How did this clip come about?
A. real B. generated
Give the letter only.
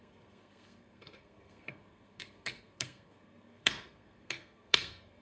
B